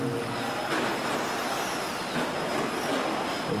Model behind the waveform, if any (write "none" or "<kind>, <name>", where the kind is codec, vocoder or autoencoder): none